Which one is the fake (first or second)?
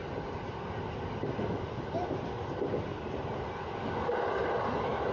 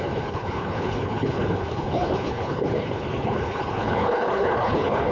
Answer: second